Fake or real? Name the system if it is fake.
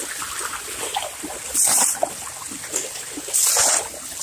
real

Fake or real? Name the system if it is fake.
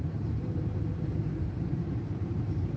fake, vocoder, BigVGAN v2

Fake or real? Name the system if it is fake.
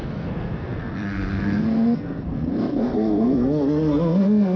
fake, codec, SNAC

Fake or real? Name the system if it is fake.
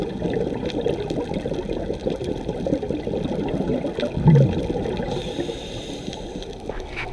real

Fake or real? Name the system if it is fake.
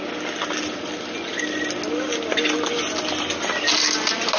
real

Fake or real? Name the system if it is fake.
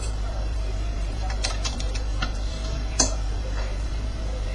fake, vocoder, BigVGAN v2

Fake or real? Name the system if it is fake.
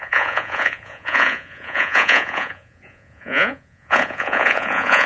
fake, vocoder, Vocos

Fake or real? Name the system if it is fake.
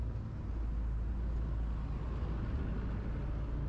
real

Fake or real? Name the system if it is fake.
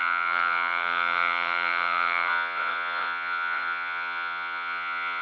fake, vocoder, Vocos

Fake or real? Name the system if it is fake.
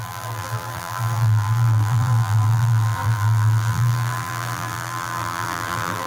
fake, vocoder, BigVGAN v2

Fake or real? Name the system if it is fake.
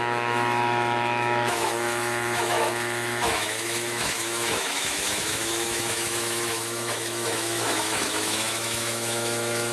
fake, autoencoder, DAC-VAE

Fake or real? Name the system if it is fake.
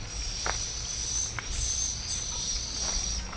real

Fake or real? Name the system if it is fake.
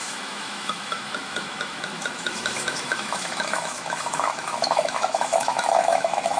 fake, autoencoder, DAC-VAE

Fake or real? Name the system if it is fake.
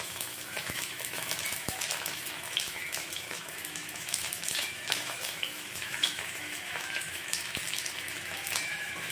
fake, autoencoder, DAC-VAE